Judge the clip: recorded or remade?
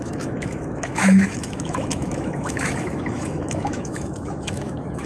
remade